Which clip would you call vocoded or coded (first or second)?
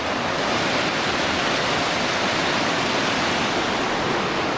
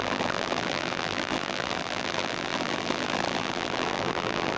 second